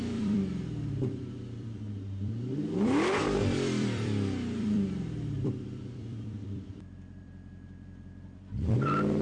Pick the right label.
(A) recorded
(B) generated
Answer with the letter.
B